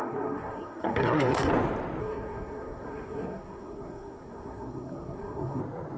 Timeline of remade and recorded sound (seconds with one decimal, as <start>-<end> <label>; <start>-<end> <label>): 0.0-1.5 remade; 1.5-2.0 recorded; 2.0-5.6 remade; 5.6-6.0 recorded

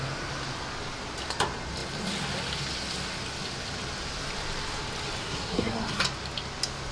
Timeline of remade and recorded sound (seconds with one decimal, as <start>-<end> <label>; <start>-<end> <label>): 0.0-5.2 recorded; 5.2-6.0 remade; 6.0-6.9 recorded

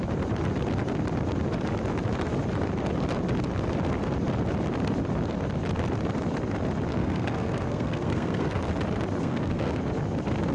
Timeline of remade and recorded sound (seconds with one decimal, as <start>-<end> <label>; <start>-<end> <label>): 0.0-7.0 recorded; 7.0-8.6 remade; 8.6-9.2 recorded; 9.2-9.8 remade; 9.8-10.5 recorded

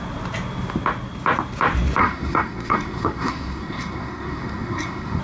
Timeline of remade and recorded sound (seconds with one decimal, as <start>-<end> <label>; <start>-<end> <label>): 0.0-2.0 recorded; 2.0-5.2 remade

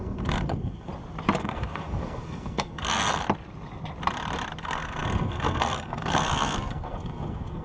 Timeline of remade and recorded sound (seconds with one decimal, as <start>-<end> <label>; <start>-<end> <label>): 0.0-0.9 remade; 0.9-1.4 recorded; 1.4-3.1 remade; 3.1-4.6 recorded; 4.6-7.6 remade

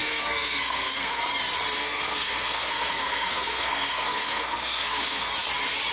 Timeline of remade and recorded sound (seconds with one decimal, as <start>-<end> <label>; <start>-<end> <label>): 0.0-1.2 remade; 1.2-1.8 recorded; 1.8-5.3 remade; 5.3-5.9 recorded

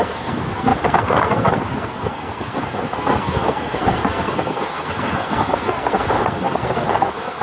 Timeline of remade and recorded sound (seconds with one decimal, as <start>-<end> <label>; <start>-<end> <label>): 0.0-7.4 remade